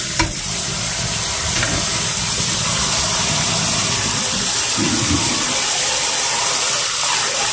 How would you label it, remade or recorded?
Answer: recorded